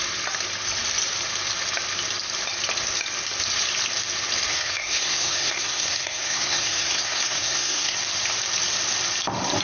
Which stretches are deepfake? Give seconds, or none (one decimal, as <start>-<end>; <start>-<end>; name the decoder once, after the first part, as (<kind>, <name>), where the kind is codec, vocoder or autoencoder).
4.5-8.0 (codec, SNAC)